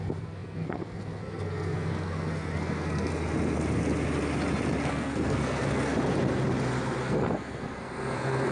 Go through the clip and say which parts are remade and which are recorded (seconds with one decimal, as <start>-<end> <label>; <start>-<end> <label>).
0.0-3.1 remade; 3.1-4.9 recorded; 4.9-5.9 remade; 5.9-7.0 recorded; 7.0-8.5 remade